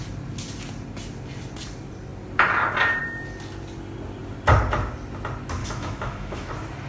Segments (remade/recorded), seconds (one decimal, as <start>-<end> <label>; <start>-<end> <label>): 0.0-5.6 recorded; 5.6-6.5 remade; 6.5-6.9 recorded